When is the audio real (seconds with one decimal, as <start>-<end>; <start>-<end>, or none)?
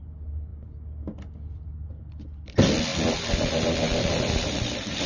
0.0-5.1